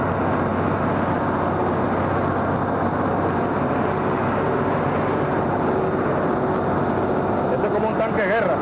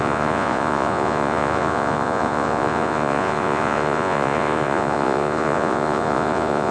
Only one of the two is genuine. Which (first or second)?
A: first